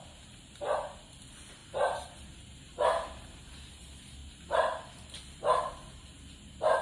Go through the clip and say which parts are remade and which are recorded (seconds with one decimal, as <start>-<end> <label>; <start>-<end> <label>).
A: 0.0-6.8 recorded